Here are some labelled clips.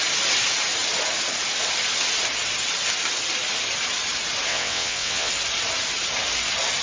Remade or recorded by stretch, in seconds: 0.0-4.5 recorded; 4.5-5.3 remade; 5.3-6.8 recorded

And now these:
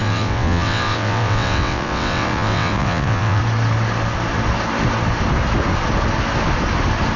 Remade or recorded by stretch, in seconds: 0.0-3.4 remade; 3.4-7.2 recorded

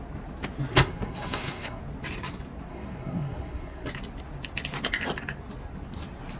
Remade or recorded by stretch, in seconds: 0.0-0.7 recorded; 0.7-1.8 remade; 1.8-2.7 recorded; 2.7-3.9 remade; 3.9-6.4 recorded

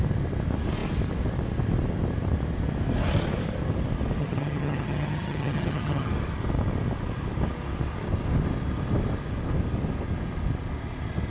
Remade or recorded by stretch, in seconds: 0.0-4.2 recorded; 4.2-6.1 remade; 6.1-11.3 recorded

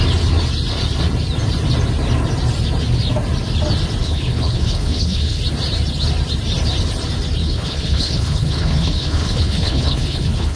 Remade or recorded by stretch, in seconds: 0.0-4.0 recorded; 4.0-5.4 remade; 5.4-7.4 recorded; 7.4-10.6 remade